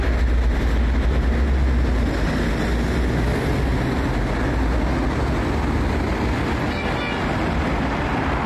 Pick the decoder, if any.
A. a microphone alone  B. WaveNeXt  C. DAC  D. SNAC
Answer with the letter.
A